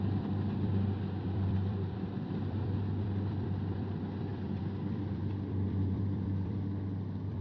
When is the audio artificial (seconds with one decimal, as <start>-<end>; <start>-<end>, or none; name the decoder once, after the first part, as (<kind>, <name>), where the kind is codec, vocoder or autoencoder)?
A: 0.0-7.4 (vocoder, BigVGAN v2)